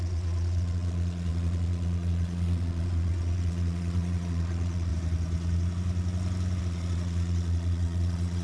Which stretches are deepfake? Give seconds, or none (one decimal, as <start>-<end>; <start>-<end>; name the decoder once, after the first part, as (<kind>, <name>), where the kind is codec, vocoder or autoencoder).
0.0-4.9 (vocoder, Vocos); 6.6-8.4